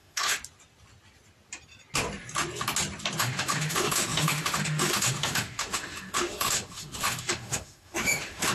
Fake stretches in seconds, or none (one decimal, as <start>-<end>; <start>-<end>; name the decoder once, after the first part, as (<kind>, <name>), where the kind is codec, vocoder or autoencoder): 0.0-0.4 (autoencoder, DAC-VAE); 3.2-8.5